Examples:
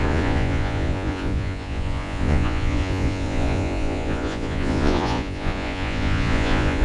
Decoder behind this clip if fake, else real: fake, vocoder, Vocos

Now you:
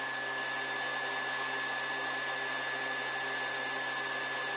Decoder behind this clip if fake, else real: real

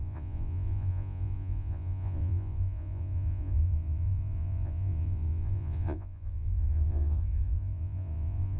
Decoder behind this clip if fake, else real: fake, vocoder, Vocos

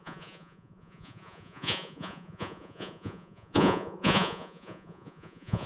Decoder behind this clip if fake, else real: fake, vocoder, Vocos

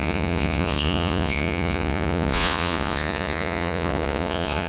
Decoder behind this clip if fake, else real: fake, vocoder, Vocos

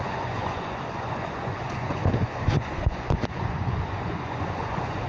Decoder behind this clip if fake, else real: fake, vocoder, Vocos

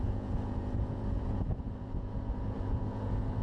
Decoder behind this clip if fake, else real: fake, vocoder, Vocos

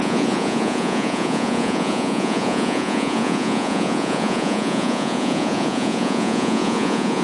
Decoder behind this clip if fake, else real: fake, vocoder, Vocos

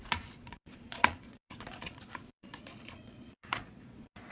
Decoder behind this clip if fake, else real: fake, vocoder, Vocos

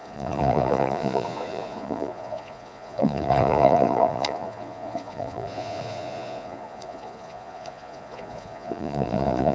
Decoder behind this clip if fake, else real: fake, vocoder, Vocos